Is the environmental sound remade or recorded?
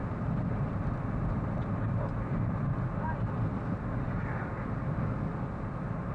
recorded